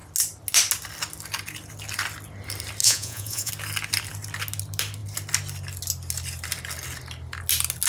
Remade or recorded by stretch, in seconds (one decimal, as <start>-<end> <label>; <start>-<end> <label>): 0.0-2.8 recorded; 2.8-3.5 remade; 3.5-7.9 recorded